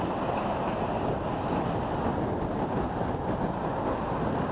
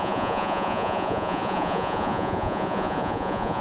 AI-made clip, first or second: second